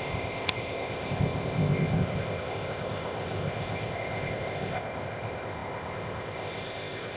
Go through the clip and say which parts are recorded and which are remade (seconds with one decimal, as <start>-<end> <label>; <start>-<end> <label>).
0.0-7.2 remade